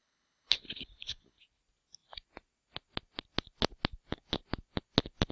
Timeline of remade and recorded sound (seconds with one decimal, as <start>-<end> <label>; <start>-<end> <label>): 0.0-1.4 remade; 1.4-5.3 recorded